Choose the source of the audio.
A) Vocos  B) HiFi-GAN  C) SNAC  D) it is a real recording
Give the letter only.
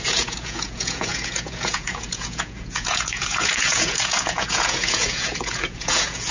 A